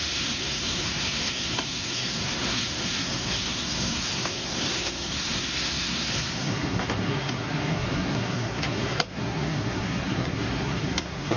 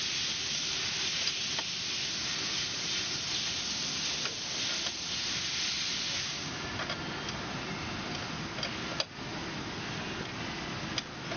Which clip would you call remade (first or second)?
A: first